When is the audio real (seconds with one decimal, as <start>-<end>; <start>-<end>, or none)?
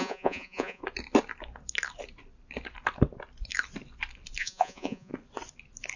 0.8-4.4; 5.1-6.0